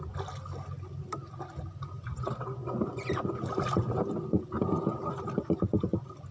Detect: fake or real real